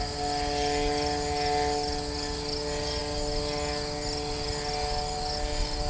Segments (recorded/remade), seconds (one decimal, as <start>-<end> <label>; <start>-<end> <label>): 0.0-5.9 recorded